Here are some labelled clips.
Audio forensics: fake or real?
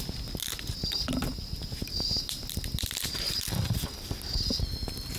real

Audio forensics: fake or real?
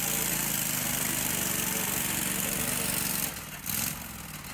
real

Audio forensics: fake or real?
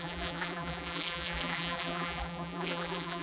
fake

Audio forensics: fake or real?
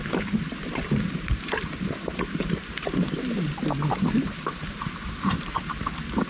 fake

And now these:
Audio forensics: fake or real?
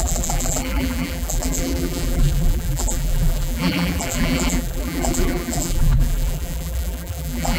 fake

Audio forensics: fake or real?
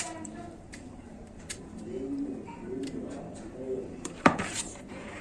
fake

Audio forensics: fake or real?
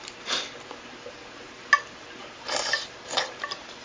real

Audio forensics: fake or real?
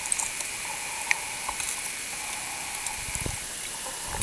fake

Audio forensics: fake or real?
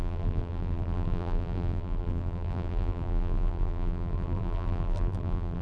fake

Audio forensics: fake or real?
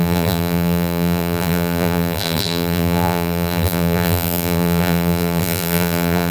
fake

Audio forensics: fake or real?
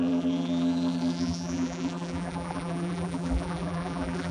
fake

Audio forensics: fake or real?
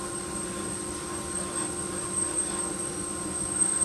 real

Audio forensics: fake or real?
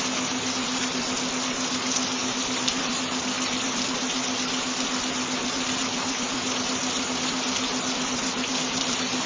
fake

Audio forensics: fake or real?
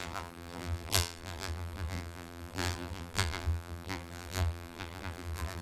fake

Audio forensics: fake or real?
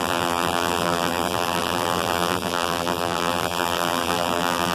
fake